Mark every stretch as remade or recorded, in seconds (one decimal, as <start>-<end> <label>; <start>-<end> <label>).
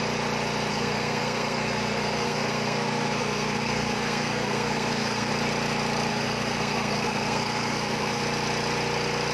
0.0-0.7 recorded; 0.7-5.3 remade; 5.3-6.1 recorded; 6.1-8.2 remade; 8.2-9.3 recorded